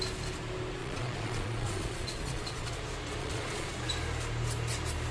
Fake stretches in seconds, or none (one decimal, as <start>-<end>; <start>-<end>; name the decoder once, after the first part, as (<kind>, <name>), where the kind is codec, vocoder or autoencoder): 0.8-2.7 (vocoder, Vocos); 3.2-3.7